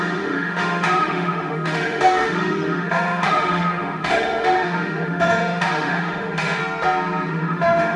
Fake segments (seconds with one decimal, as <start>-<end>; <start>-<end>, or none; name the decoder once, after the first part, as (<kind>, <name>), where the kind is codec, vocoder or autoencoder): 0.0-6.6 (autoencoder, DAC-VAE); 7.3-8.0